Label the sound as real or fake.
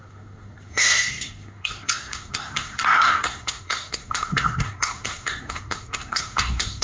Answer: fake